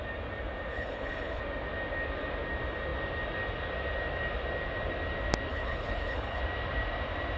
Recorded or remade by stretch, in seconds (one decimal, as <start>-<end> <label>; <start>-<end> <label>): 0.0-0.7 recorded; 0.7-1.4 remade; 1.4-5.5 recorded; 5.5-6.4 remade; 6.4-7.4 recorded